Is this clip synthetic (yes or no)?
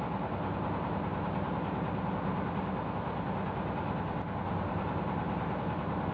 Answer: no